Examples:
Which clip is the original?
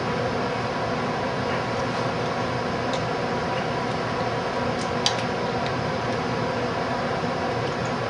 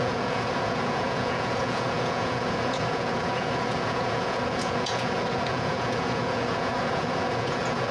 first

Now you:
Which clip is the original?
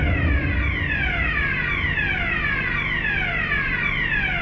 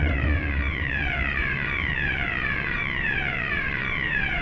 first